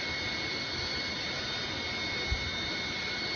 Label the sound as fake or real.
real